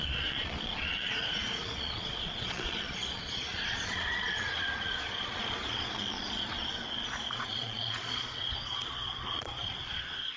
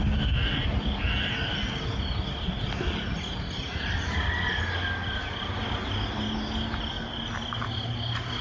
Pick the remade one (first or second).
first